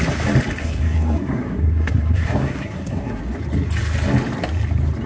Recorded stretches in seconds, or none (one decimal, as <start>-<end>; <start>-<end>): 0.0-0.6; 3.2-5.1